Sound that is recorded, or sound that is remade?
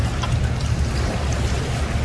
recorded